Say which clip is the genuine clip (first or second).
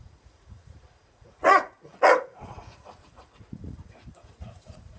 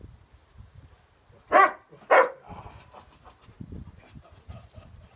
second